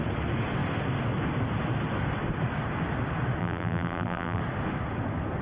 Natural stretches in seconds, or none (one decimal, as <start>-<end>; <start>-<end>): 0.0-3.4; 4.4-5.4